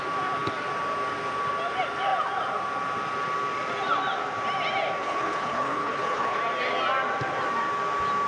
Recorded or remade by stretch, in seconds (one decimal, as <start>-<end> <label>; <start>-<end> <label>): 0.0-5.0 recorded; 5.0-6.4 remade; 6.4-8.3 recorded